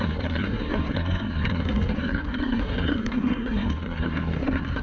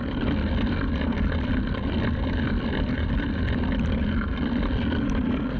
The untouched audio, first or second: second